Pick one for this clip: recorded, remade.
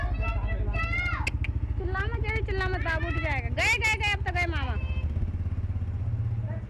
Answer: recorded